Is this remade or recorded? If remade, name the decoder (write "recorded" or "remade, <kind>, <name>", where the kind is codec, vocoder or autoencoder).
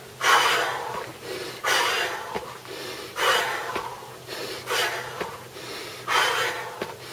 recorded